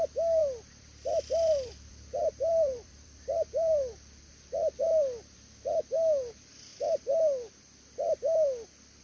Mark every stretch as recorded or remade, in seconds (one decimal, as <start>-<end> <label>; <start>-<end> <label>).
0.0-0.4 recorded; 0.4-4.8 remade; 4.8-9.0 recorded